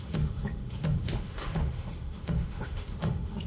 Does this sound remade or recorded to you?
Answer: remade